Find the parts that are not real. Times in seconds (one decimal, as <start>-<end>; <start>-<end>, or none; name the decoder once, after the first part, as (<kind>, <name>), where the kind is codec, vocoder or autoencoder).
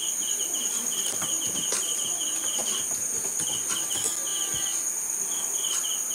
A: none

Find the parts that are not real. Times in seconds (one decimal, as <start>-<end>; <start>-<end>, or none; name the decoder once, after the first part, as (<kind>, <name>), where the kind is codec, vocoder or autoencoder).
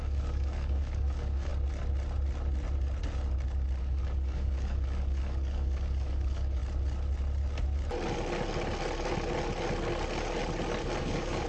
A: 0.0-1.5 (codec, DAC); 3.8-6.6; 11.0-11.5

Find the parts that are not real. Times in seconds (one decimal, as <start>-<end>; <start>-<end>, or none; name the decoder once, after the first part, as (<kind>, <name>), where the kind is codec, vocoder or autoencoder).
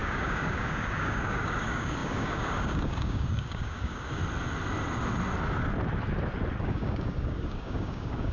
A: 0.0-4.2 (codec, DAC); 6.6-8.3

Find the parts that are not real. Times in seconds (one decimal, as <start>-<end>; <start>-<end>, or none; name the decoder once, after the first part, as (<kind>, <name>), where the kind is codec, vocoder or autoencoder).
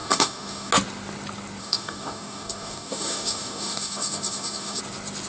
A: 0.0-0.7 (codec, DAC); 1.6-4.8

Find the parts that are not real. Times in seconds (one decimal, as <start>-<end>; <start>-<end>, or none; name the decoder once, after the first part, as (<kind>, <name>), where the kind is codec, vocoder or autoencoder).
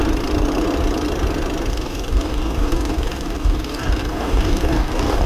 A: 1.7-5.3 (codec, DAC)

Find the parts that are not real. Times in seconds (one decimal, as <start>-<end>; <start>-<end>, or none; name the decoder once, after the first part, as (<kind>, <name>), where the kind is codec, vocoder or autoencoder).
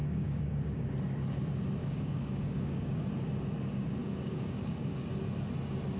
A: 0.0-0.9 (codec, DAC); 1.8-3.1; 4.0-5.0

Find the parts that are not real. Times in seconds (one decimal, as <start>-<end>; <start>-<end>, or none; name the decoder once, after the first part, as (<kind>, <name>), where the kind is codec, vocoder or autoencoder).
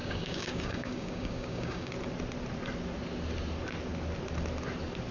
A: 0.0-1.9 (codec, DAC)